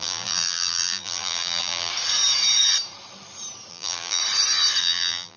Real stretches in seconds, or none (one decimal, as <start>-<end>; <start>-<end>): 1.9-3.7; 4.2-4.8